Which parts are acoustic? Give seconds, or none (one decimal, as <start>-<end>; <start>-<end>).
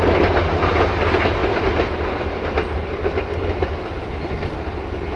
0.0-5.2